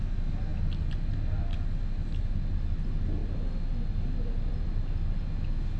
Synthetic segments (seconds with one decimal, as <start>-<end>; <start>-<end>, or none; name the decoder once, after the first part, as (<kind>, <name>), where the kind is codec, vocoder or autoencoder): none